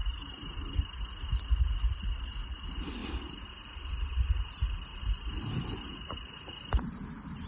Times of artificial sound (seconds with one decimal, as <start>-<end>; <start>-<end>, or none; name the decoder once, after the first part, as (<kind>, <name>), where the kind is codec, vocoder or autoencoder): 0.0-0.5 (vocoder, BigVGAN v2)